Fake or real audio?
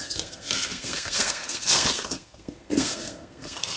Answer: fake